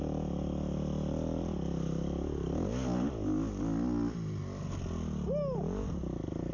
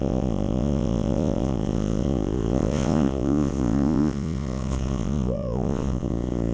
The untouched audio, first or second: first